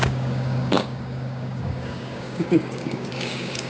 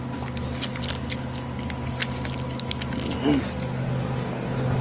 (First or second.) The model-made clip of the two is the first